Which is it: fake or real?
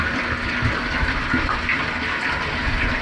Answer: real